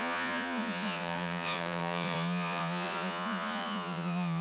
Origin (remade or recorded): remade